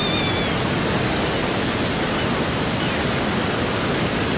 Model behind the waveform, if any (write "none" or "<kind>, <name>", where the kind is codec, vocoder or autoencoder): none